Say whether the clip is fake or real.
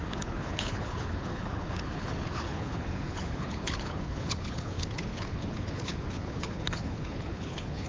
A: fake